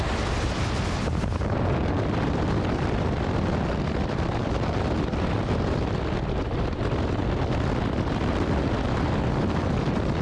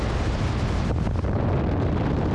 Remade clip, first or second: first